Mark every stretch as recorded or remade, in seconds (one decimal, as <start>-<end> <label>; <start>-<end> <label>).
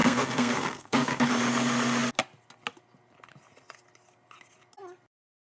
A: 0.0-1.3 remade; 1.3-5.6 recorded